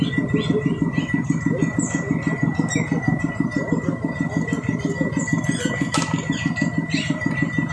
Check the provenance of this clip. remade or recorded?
recorded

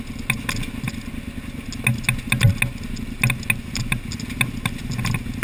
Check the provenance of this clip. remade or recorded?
recorded